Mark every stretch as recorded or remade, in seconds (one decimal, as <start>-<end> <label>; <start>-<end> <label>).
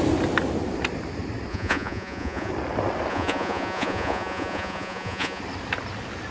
0.0-1.5 recorded; 1.5-2.5 remade; 2.5-3.1 recorded; 3.1-5.4 remade; 5.4-6.3 recorded